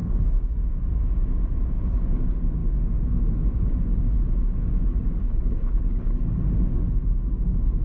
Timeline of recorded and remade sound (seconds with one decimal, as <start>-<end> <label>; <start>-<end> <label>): 0.0-5.2 recorded; 5.2-6.2 remade; 6.2-7.8 recorded